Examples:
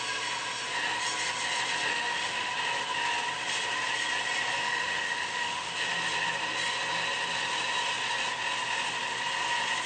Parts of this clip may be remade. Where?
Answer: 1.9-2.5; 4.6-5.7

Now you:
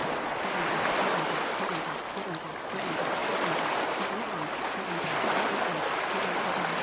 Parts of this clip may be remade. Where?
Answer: 0.0-1.7